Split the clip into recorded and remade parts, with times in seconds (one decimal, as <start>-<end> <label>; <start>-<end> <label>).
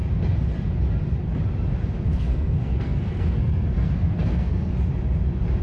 0.0-2.1 recorded; 2.1-4.7 remade; 4.7-5.6 recorded